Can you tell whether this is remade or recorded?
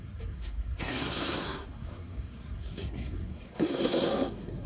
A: remade